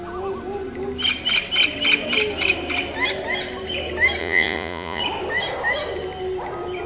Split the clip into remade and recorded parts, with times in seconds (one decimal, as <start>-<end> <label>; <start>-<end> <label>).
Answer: 0.0-4.2 recorded; 4.2-5.0 remade; 5.0-6.9 recorded